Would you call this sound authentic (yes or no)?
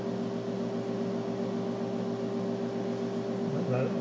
yes